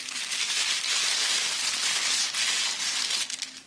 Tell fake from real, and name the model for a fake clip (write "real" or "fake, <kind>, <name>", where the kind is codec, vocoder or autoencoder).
real